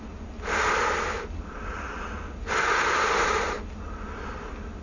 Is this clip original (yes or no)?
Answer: yes